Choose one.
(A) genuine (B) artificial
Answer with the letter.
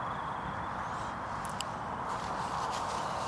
A